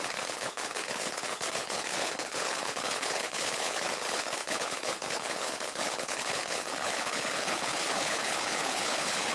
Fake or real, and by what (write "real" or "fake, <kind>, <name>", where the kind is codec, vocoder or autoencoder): fake, codec, HILCodec